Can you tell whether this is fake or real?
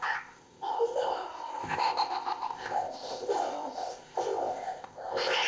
fake